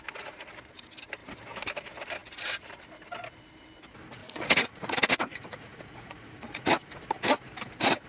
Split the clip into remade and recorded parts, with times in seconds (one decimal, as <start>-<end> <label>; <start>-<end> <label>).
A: 0.0-4.2 recorded; 4.2-7.0 remade; 7.0-8.1 recorded